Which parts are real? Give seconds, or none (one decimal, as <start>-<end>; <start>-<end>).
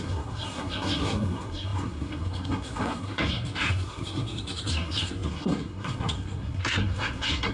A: none